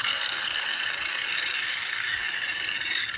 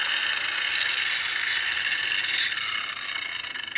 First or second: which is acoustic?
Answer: second